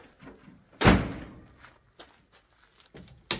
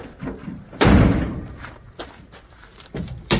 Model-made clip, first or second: second